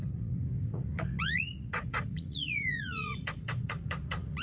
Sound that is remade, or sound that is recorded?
remade